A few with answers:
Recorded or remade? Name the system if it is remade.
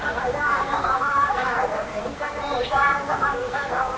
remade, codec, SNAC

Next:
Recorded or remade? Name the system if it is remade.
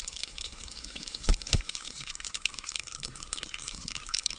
remade, codec, SNAC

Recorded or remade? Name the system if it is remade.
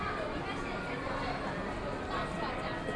recorded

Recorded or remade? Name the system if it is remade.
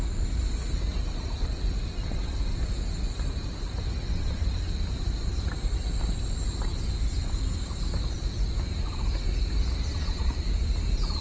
recorded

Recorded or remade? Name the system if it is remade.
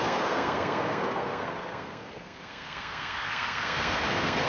remade, codec, SNAC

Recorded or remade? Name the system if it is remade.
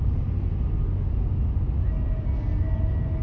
recorded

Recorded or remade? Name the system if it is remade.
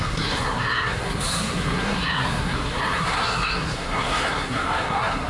remade, codec, SNAC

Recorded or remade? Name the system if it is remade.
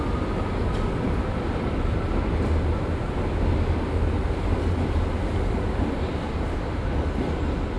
recorded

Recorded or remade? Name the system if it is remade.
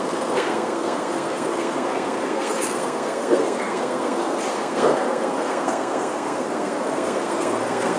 remade, codec, SNAC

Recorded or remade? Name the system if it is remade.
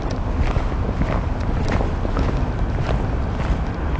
recorded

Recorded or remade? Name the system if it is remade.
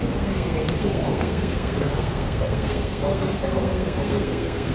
remade, codec, SNAC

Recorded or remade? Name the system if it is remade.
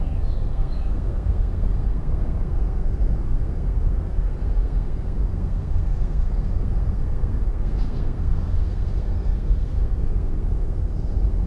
remade, codec, SNAC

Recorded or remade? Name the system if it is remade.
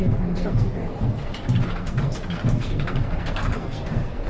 remade, codec, SNAC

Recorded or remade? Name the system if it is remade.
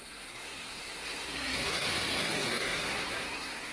remade, codec, SNAC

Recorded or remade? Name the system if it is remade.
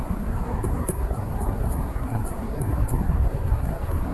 remade, codec, SNAC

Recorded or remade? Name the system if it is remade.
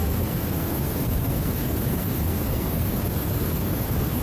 remade, codec, SNAC